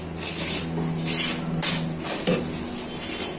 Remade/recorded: recorded